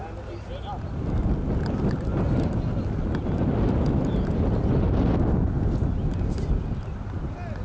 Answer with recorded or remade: recorded